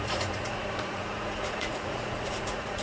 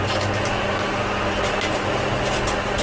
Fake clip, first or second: first